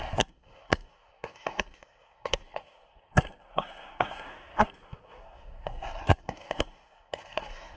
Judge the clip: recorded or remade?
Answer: remade